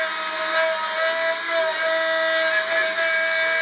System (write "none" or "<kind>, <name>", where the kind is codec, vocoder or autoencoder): none